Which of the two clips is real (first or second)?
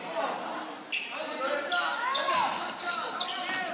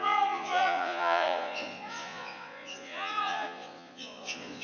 first